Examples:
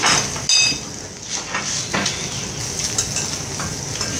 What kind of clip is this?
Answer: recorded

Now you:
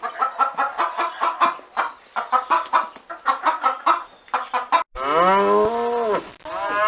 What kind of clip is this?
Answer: recorded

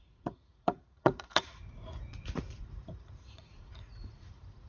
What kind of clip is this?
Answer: remade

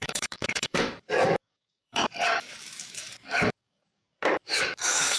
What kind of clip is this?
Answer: remade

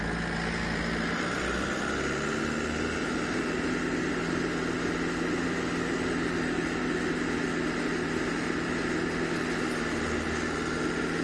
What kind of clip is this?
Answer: recorded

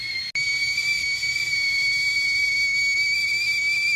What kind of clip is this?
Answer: recorded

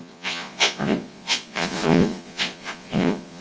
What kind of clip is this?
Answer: remade